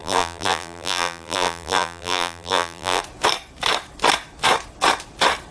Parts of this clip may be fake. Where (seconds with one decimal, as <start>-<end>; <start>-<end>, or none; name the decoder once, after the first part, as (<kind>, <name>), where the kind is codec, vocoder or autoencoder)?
0.0-3.0 (vocoder, BigVGAN v2)